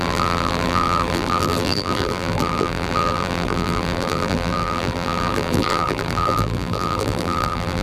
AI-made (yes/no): yes